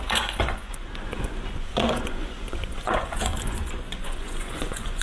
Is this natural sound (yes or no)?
no